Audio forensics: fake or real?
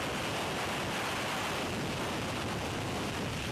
real